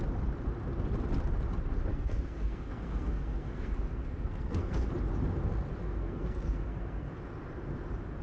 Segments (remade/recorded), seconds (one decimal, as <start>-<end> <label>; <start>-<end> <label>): 0.0-1.9 recorded; 1.9-4.9 remade; 4.9-5.8 recorded; 5.8-7.1 remade; 7.1-8.2 recorded